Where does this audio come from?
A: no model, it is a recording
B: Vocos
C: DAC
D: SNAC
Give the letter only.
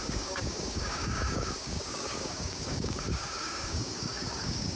C